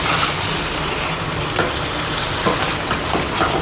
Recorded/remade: recorded